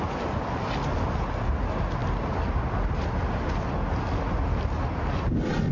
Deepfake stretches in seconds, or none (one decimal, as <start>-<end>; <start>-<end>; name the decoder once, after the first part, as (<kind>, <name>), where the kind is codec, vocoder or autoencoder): none